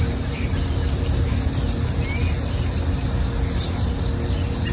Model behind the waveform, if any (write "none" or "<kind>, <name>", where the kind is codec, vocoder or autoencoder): none